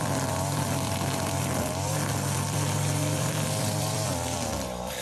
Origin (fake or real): fake